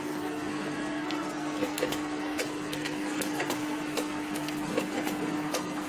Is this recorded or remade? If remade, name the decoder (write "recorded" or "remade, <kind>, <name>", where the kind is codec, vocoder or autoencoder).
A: remade, codec, SNAC